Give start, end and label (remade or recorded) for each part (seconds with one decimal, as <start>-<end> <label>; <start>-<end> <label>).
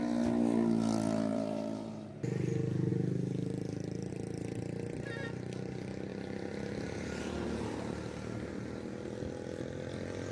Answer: 0.0-1.3 recorded; 1.3-2.1 remade; 2.1-2.9 recorded; 2.9-4.1 remade; 4.1-6.1 recorded; 6.1-7.2 remade; 7.2-10.3 recorded